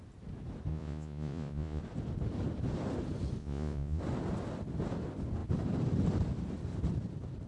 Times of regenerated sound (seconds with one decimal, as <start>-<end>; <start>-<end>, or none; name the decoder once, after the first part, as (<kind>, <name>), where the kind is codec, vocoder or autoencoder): 0.7-1.8 (vocoder, Vocos); 3.4-4.0